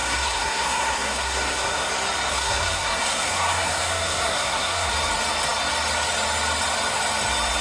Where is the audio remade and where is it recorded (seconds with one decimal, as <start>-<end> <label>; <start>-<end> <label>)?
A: 0.0-1.9 remade; 1.9-2.3 recorded; 2.3-4.9 remade; 4.9-7.6 recorded